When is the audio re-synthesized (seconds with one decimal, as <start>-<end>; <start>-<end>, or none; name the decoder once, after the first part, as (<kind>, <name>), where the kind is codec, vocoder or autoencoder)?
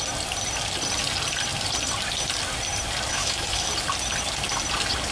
3.1-3.7 (autoencoder, DAC-VAE)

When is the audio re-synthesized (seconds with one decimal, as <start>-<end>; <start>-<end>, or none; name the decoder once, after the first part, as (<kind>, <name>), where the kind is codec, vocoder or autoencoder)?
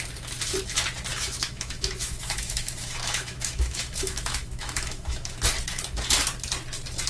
1.1-5.4 (autoencoder, DAC-VAE)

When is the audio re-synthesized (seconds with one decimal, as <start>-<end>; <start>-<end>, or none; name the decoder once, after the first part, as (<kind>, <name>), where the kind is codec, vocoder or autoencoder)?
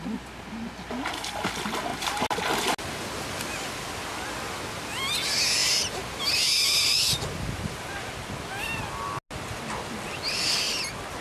none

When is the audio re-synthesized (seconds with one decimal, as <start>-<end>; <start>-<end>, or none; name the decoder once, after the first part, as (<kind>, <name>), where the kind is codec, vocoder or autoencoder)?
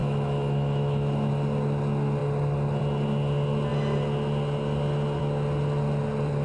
0.0-1.3 (autoencoder, DAC-VAE)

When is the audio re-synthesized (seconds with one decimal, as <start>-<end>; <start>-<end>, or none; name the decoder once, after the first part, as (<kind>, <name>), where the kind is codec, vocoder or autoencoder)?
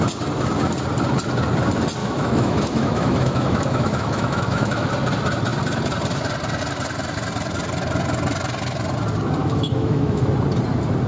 2.0-4.9 (autoencoder, DAC-VAE); 9.4-10.3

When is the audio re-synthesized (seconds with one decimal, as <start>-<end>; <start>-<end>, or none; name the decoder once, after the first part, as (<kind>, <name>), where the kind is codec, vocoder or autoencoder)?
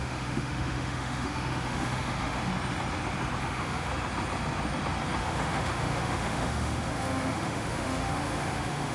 0.0-2.5 (autoencoder, DAC-VAE); 3.4-3.9; 5.2-8.9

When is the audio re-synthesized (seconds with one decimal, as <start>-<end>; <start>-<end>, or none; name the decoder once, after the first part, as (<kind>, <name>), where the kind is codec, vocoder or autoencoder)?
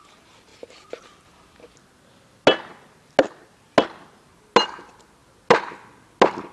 none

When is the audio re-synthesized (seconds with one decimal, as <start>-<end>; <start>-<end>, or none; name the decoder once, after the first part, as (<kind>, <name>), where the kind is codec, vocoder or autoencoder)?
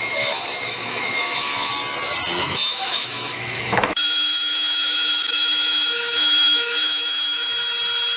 0.0-1.7 (autoencoder, DAC-VAE); 2.4-7.5